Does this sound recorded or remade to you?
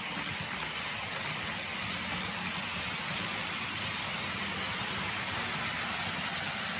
recorded